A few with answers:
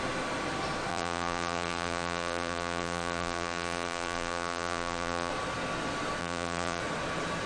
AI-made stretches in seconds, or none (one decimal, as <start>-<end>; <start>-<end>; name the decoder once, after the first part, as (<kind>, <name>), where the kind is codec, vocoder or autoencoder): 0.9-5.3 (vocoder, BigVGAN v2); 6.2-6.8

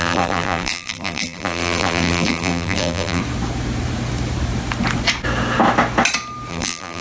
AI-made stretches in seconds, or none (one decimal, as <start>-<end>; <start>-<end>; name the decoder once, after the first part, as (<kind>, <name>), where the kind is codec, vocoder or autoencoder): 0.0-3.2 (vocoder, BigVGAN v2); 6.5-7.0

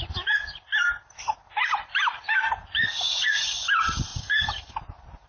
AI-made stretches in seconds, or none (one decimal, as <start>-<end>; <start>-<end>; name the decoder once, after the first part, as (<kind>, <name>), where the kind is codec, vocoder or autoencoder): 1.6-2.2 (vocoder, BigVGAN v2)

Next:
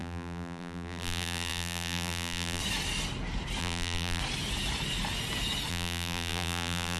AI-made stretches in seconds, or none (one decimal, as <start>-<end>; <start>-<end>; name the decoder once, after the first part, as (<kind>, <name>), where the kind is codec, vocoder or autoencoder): 0.0-2.6 (vocoder, BigVGAN v2); 3.6-4.2; 5.7-7.0

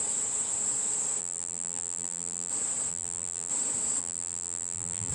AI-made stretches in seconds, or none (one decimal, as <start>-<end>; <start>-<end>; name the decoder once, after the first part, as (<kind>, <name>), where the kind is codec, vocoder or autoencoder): 1.2-2.5 (vocoder, BigVGAN v2); 2.9-3.5; 4.0-5.1

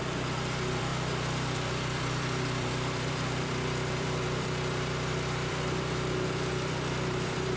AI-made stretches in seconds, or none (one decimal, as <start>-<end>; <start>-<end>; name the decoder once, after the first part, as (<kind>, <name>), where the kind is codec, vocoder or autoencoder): 0.0-7.6 (vocoder, BigVGAN v2)

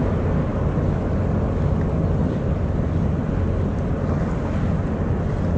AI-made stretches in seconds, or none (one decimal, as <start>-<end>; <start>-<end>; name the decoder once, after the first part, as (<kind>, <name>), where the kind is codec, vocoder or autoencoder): none

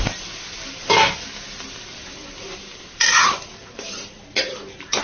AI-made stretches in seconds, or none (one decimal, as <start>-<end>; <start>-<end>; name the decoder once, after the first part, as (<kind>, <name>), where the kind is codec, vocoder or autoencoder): 2.0-5.0 (vocoder, BigVGAN v2)